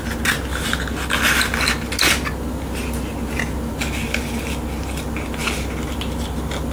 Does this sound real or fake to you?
real